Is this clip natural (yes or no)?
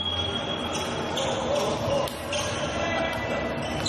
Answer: yes